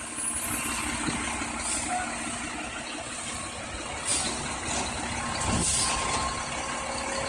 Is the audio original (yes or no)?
yes